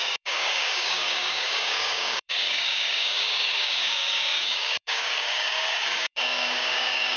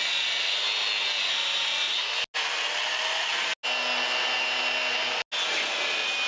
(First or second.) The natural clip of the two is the second